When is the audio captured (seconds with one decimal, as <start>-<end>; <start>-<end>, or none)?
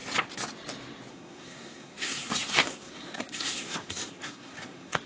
0.0-1.1